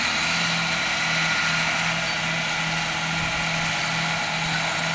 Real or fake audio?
real